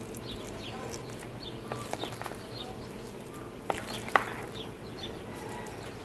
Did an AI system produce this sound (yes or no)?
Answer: no